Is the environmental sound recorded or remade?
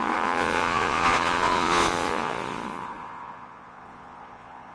remade